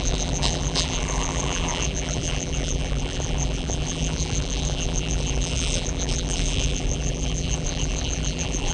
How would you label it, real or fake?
fake